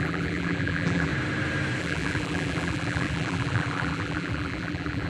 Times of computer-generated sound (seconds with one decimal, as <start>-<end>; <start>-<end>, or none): 0.0-1.1; 1.8-5.1